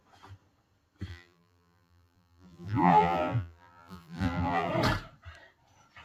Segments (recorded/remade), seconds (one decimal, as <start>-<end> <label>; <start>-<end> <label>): 0.0-1.1 recorded; 1.1-4.7 remade; 4.7-6.0 recorded